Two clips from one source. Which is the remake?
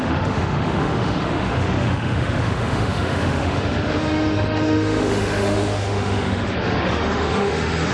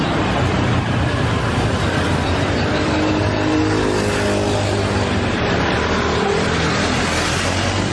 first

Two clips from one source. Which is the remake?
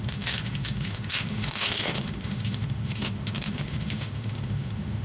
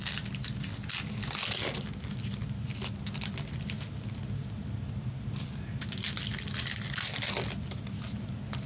first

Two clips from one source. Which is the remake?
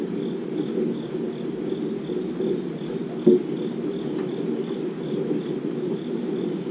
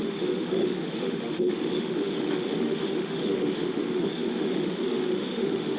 second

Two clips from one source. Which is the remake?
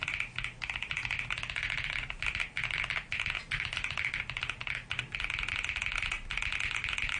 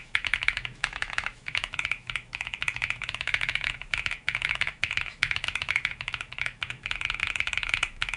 second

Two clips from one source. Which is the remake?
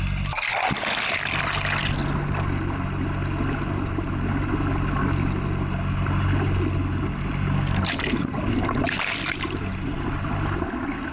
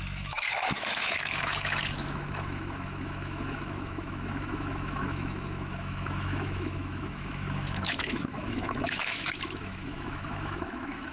second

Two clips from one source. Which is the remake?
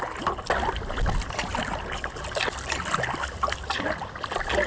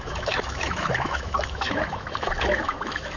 second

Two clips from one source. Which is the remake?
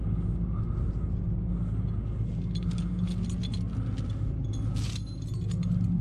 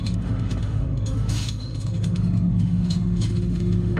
second